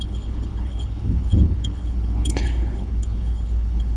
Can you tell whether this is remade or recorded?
remade